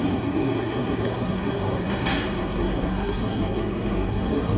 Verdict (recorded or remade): remade